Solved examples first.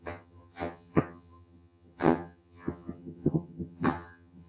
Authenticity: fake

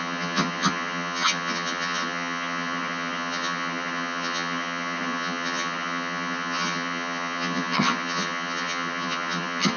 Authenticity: fake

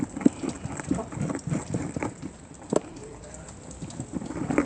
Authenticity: real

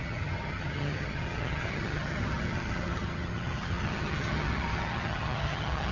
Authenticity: fake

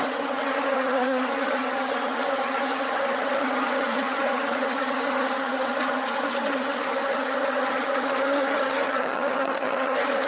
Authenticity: fake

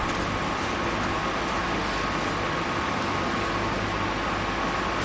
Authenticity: real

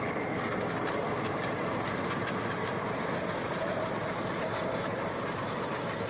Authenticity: real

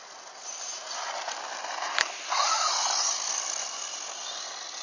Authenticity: real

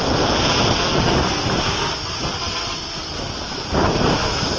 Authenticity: real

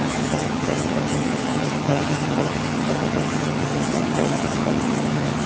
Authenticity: fake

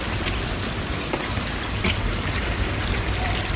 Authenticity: real